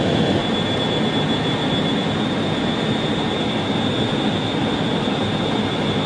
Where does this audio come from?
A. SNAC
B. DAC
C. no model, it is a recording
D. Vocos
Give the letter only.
C